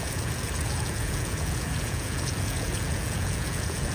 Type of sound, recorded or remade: remade